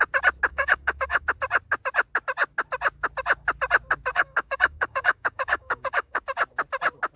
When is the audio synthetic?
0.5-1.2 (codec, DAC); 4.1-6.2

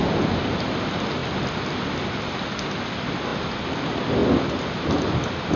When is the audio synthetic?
none